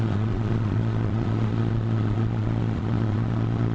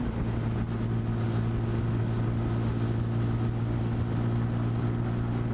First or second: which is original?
second